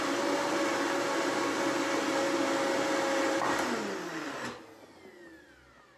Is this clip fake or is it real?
real